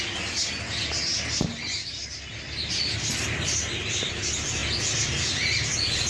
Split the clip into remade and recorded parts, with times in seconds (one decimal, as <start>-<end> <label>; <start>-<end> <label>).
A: 0.0-6.1 recorded